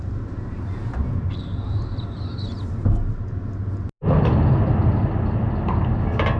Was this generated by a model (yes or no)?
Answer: no